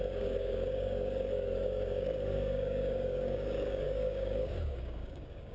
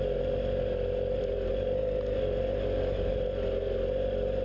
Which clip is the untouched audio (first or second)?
second